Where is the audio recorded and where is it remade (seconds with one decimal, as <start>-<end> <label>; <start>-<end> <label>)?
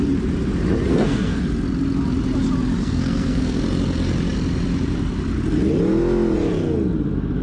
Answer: 0.0-0.9 recorded; 0.9-1.4 remade; 1.4-2.8 recorded; 2.8-3.6 remade; 3.6-7.4 recorded